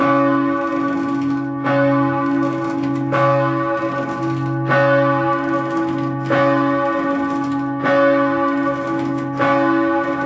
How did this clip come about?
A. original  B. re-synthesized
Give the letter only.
A